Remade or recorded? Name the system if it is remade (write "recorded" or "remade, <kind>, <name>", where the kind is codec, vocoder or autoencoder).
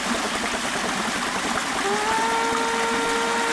recorded